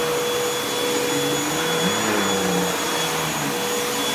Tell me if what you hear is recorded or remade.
recorded